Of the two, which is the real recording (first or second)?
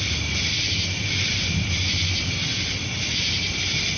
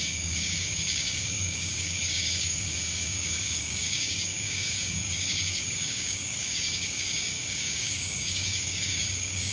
first